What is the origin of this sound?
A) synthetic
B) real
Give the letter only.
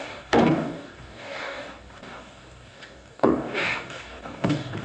A